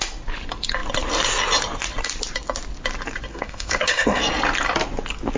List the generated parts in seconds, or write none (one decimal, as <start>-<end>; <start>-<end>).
3.3-4.2